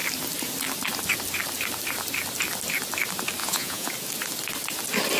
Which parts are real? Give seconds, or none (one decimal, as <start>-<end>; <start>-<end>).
0.0-3.4; 3.9-5.2